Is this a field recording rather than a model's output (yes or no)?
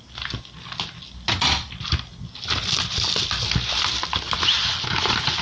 yes